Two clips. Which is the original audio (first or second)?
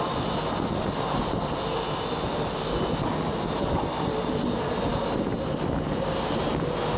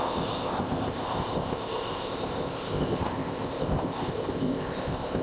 first